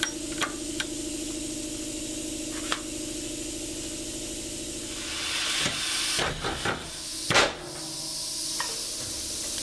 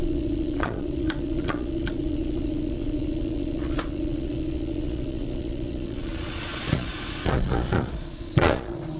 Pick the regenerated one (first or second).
second